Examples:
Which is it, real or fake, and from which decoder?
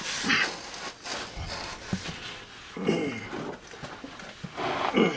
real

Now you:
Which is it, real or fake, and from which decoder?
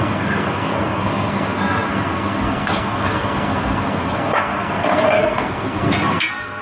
fake, codec, SNAC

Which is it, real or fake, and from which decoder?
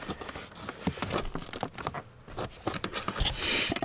real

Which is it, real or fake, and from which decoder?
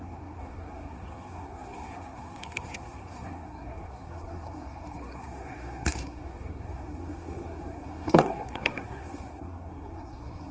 fake, codec, SNAC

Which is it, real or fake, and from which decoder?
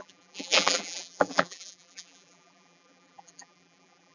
fake, vocoder, BigVGAN v2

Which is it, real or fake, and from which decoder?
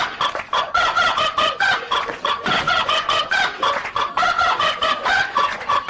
fake, vocoder, Vocos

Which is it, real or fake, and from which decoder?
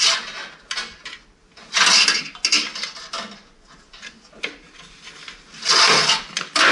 real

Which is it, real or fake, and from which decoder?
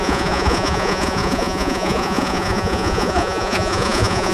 fake, vocoder, Vocos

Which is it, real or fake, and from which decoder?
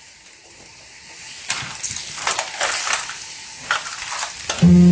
real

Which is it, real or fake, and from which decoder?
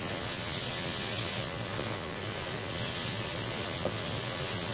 fake, vocoder, Vocos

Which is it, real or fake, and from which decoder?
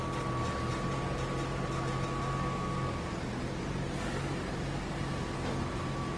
real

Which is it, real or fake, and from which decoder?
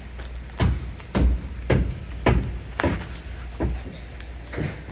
real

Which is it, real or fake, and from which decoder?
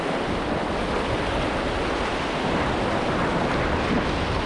real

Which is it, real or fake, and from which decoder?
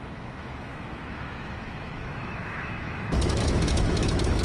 fake, autoencoder, DAC-VAE